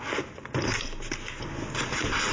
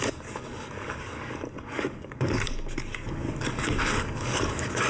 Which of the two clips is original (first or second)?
first